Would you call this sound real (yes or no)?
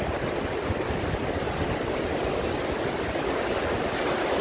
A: yes